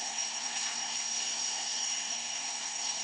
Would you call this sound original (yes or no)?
no